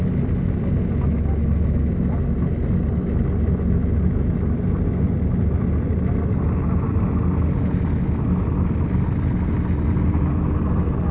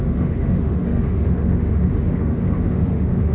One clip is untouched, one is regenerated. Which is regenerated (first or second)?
second